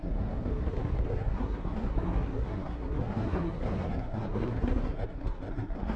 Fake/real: fake